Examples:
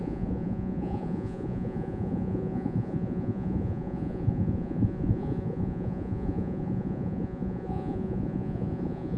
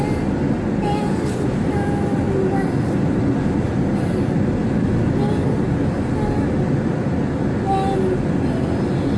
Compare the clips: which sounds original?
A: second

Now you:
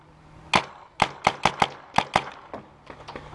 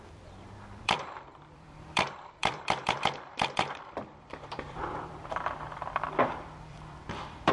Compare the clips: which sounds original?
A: first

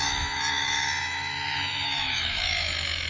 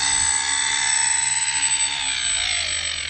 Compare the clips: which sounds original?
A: second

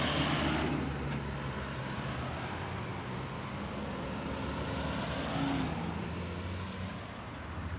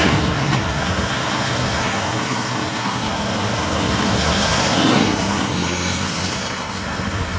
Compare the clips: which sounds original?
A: first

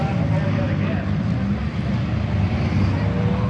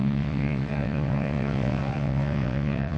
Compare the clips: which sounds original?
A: first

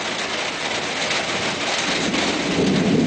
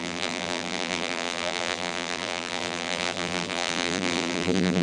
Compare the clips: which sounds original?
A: first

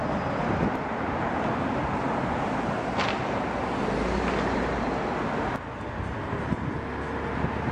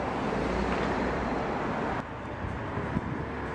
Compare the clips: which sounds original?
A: first